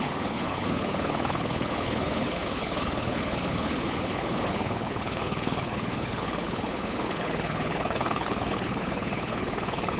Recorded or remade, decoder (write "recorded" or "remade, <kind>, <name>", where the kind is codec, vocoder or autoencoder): remade, codec, HILCodec